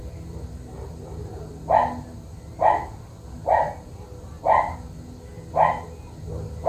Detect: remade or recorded recorded